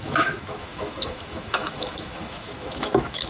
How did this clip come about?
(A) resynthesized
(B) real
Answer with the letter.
A